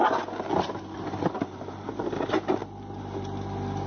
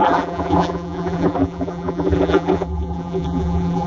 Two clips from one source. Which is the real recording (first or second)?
first